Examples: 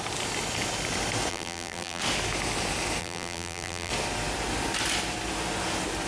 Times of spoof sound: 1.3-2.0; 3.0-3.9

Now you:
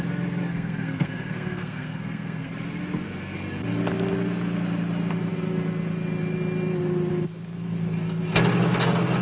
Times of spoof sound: 0.4-2.5